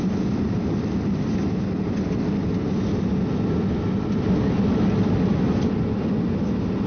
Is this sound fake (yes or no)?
no